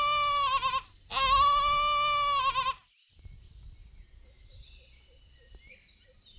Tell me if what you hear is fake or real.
real